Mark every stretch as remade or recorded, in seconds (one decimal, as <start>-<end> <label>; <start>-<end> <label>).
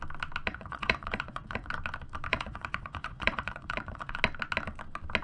0.0-0.5 recorded; 0.5-1.7 remade; 1.7-2.3 recorded; 2.3-4.2 remade; 4.2-5.2 recorded